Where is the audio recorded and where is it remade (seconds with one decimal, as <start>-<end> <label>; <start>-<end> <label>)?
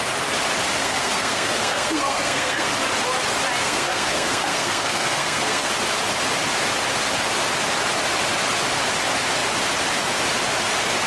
0.0-0.8 recorded; 0.8-2.7 remade; 2.7-3.6 recorded; 3.6-5.7 remade; 5.7-11.1 recorded